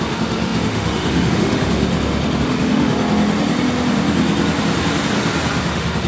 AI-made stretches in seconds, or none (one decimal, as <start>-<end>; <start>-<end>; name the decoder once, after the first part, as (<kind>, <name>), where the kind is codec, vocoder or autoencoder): 0.0-1.8 (autoencoder, DAC-VAE); 2.4-2.9; 5.6-6.1